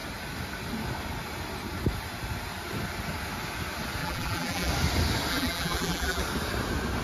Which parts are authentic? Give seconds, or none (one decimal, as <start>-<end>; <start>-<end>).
0.0-4.0; 4.7-5.3; 6.2-7.0